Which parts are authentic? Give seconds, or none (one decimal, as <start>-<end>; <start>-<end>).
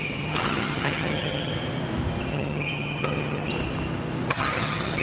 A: 1.5-2.3; 3.5-4.3